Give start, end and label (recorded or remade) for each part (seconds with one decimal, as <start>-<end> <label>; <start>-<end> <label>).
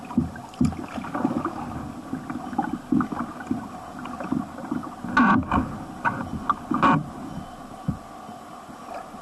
0.0-9.2 recorded